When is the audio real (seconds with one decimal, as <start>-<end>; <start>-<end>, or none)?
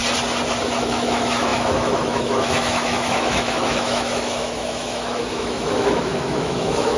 0.0-0.8